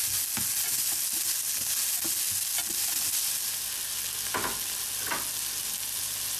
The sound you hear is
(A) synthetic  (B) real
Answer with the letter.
B